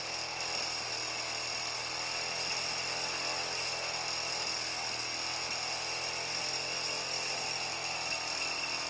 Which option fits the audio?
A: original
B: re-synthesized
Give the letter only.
A